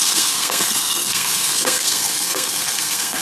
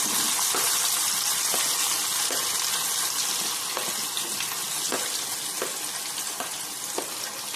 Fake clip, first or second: first